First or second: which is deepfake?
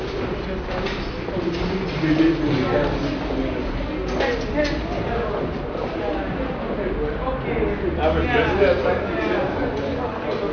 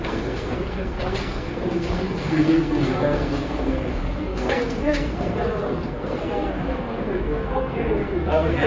second